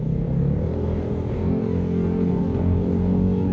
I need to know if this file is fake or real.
fake